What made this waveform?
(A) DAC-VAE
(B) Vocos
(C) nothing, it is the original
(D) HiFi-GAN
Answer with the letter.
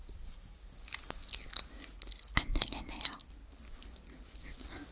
C